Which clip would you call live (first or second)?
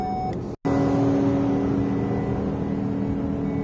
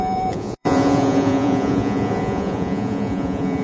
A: first